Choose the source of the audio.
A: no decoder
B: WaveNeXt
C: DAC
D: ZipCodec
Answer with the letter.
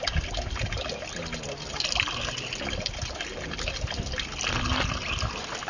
A